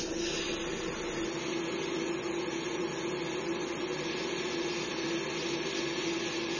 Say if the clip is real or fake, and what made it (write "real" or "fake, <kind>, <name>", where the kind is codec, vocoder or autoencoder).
real